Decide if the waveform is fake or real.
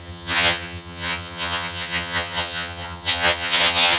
fake